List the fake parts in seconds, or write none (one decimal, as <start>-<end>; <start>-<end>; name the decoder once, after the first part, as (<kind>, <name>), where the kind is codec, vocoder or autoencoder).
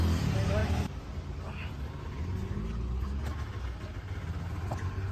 none